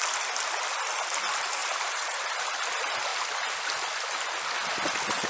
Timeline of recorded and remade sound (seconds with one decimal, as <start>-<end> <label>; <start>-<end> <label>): 0.0-1.6 recorded; 1.6-2.2 remade; 2.2-5.3 recorded